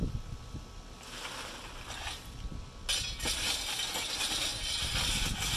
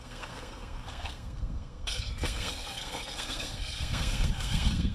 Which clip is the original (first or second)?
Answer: first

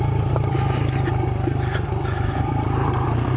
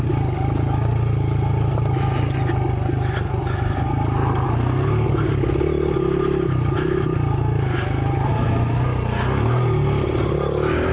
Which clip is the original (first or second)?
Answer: second